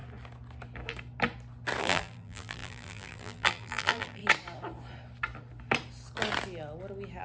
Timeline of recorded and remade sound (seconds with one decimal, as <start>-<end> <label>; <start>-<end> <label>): 0.0-1.8 recorded; 1.8-4.2 remade; 4.2-7.2 recorded